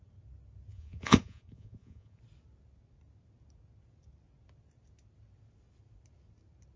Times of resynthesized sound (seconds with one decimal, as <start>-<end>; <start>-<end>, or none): 0.7-2.2